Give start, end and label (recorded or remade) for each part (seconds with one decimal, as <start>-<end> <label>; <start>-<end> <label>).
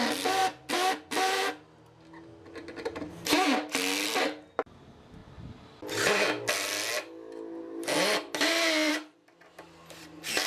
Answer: 0.0-10.5 recorded